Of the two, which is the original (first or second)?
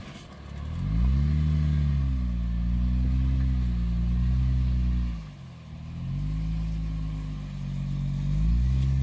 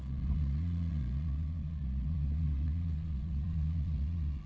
first